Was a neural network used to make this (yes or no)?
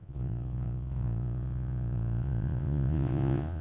yes